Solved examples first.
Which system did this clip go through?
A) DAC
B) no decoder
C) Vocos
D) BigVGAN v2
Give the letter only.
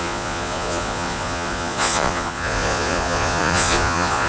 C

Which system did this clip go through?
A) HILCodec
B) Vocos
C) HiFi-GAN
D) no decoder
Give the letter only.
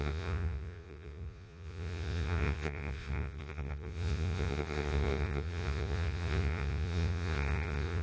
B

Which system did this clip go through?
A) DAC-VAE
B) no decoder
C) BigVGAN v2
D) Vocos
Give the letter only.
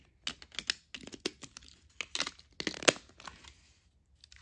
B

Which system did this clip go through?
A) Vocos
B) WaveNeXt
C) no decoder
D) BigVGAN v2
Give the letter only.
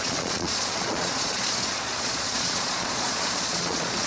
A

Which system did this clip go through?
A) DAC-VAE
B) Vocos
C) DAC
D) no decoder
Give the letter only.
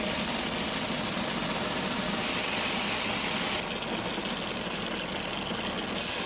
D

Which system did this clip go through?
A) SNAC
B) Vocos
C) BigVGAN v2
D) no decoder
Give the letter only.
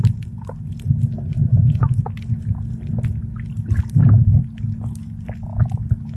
D